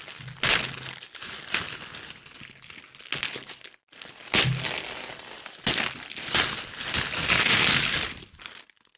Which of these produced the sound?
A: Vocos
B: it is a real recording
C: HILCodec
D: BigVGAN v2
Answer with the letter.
B